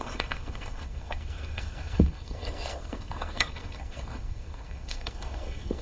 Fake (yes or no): yes